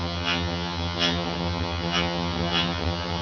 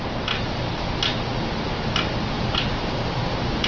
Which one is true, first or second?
second